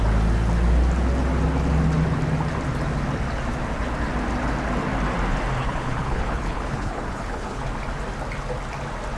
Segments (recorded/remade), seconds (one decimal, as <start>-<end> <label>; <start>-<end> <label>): 0.0-5.6 recorded; 5.6-7.6 remade; 7.6-9.2 recorded